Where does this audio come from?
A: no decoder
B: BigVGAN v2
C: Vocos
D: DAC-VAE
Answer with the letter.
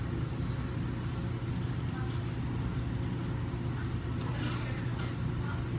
A